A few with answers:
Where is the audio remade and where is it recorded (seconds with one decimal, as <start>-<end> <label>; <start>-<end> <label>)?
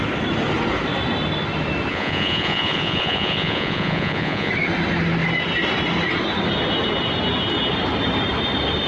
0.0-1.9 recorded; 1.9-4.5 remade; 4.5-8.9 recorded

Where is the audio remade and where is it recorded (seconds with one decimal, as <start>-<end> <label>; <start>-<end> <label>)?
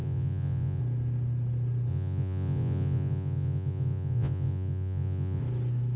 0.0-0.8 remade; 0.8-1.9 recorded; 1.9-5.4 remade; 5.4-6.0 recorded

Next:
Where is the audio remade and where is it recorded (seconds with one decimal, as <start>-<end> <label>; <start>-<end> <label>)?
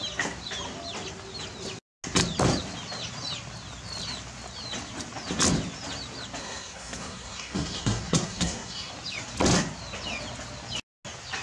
0.0-6.4 recorded; 6.4-8.9 remade; 8.9-11.4 recorded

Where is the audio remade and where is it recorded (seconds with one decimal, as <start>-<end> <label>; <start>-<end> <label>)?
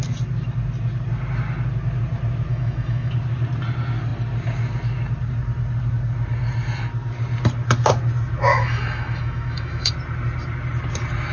0.0-2.5 recorded; 2.5-3.1 remade; 3.1-8.5 recorded; 8.5-9.9 remade; 9.9-11.3 recorded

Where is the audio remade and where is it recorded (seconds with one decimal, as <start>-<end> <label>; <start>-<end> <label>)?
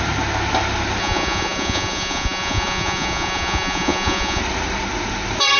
0.0-1.0 recorded; 1.0-4.4 remade; 4.4-5.6 recorded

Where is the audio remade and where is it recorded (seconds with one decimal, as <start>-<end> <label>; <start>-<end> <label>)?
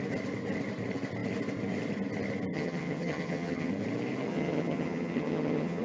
0.0-2.5 recorded; 2.5-3.7 remade; 3.7-4.3 recorded; 4.3-5.8 remade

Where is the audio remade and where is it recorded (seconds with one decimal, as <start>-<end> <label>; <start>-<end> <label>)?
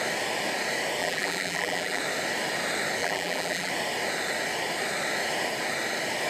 0.0-1.0 recorded; 1.0-2.0 remade; 2.0-3.0 recorded; 3.0-3.7 remade; 3.7-6.3 recorded